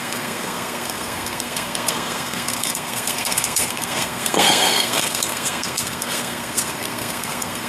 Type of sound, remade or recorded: remade